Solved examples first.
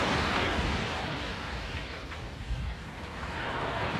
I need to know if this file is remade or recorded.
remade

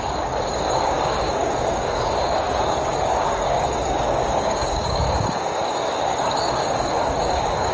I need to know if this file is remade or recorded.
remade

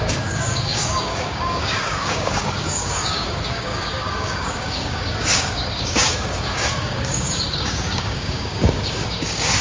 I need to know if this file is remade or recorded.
remade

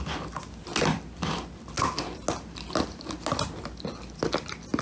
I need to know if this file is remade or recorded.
recorded